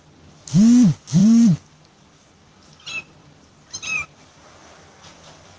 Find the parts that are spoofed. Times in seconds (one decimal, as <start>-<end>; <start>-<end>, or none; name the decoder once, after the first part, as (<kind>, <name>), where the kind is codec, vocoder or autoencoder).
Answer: 1.2-2.6 (vocoder, BigVGAN v2); 3.2-4.6